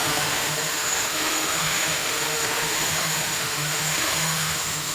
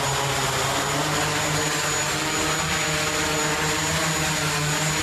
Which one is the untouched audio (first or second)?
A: second